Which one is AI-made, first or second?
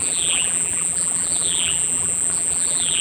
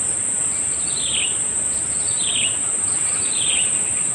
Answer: first